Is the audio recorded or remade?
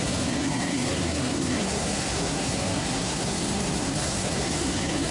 remade